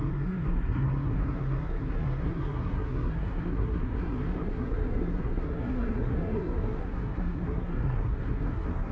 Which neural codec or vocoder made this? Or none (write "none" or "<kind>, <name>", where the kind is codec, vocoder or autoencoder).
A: codec, SNAC